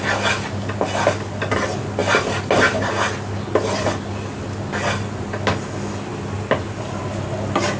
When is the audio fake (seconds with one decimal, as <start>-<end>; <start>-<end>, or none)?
none